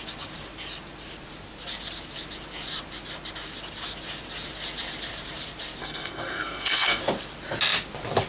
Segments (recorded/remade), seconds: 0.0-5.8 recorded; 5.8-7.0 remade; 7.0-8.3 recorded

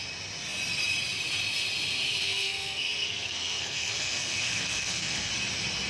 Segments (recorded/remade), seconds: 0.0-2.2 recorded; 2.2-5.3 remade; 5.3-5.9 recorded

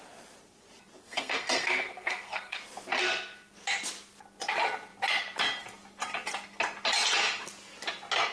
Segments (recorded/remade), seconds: 0.0-1.0 recorded; 1.0-2.6 remade; 2.6-8.3 recorded

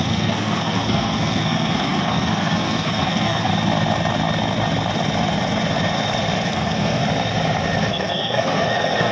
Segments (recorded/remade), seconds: 0.0-3.5 remade; 3.5-6.5 recorded; 6.5-7.0 remade; 7.0-7.9 recorded; 7.9-9.1 remade

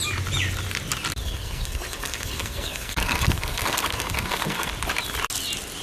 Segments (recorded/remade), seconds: 0.0-1.2 recorded; 1.2-4.7 remade; 4.7-5.8 recorded

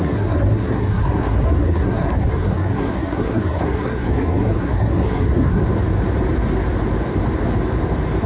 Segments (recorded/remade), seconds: 0.0-5.6 remade; 5.6-8.3 recorded

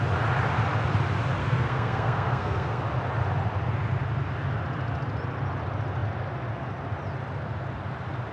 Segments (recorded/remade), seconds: 0.0-1.4 recorded; 1.4-2.8 remade; 2.8-8.3 recorded